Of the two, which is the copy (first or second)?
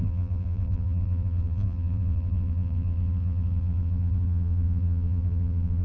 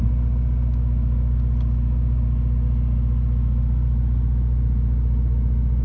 first